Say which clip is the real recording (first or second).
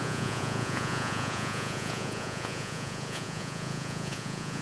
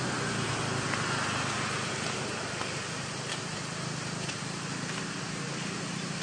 second